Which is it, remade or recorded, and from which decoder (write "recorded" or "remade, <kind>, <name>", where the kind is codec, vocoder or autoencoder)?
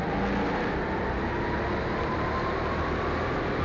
recorded